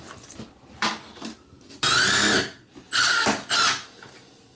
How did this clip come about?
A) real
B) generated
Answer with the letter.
B